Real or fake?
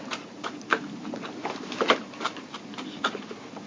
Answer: fake